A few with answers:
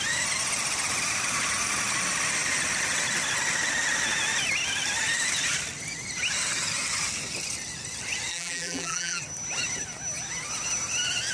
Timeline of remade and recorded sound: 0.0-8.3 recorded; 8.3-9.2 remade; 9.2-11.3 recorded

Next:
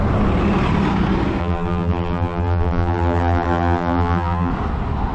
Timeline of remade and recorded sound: 0.0-1.4 recorded; 1.4-4.5 remade; 4.5-5.1 recorded

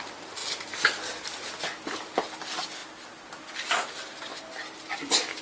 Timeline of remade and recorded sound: 0.0-5.4 recorded

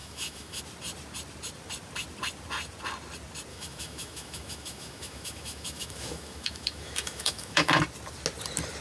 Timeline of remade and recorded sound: 0.0-0.6 remade; 0.6-3.5 recorded; 3.5-7.8 remade; 7.8-8.8 recorded

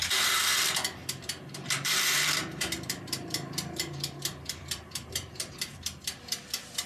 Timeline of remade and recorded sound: 0.0-6.9 remade

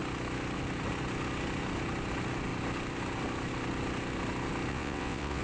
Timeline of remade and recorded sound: 0.0-4.7 recorded; 4.7-5.4 remade